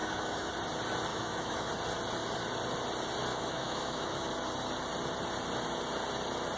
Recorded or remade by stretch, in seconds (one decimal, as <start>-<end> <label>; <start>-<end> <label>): 0.0-0.5 remade; 0.5-1.1 recorded; 1.1-1.7 remade; 1.7-3.3 recorded; 3.3-4.3 remade; 4.3-6.6 recorded